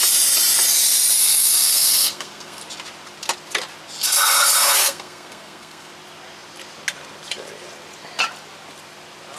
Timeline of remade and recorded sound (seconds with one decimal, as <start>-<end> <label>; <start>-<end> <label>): 0.0-1.2 recorded; 1.2-2.6 remade; 2.6-4.8 recorded; 4.8-5.9 remade; 5.9-9.4 recorded